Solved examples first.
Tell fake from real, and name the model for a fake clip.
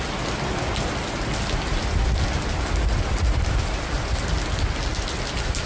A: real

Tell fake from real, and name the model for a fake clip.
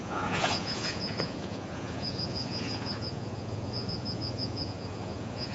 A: fake, vocoder, Vocos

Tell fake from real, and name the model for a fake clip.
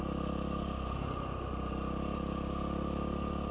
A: real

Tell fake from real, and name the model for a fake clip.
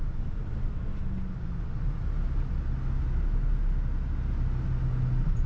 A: real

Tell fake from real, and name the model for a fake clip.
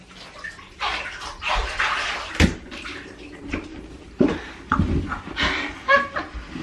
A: real